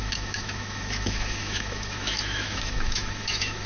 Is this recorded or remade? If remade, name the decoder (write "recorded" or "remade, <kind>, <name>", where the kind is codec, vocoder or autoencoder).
remade, autoencoder, DAC-VAE